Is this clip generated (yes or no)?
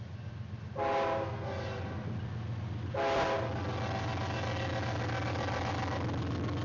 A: no